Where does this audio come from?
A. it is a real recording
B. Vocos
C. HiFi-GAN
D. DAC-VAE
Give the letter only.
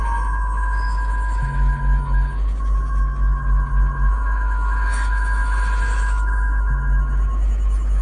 D